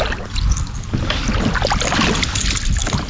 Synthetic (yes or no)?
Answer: no